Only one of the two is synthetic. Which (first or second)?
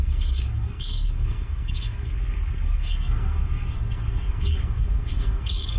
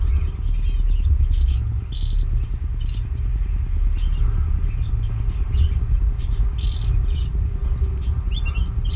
first